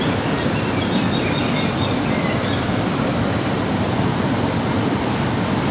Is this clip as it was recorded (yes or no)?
yes